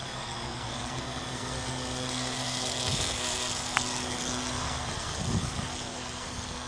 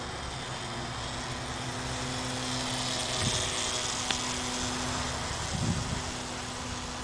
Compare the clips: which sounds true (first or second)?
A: second